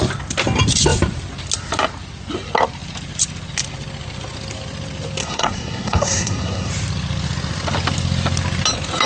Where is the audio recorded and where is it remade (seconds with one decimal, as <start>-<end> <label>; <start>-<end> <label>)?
0.0-5.2 recorded; 5.2-6.7 remade; 6.7-9.1 recorded